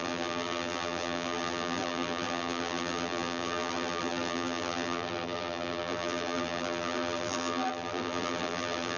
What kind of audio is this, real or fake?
fake